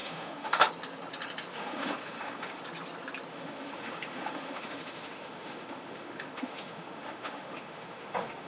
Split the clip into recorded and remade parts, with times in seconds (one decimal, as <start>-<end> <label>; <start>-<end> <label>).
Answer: 0.0-0.7 remade; 0.7-1.5 recorded; 1.5-2.6 remade; 2.6-3.3 recorded; 3.3-8.5 remade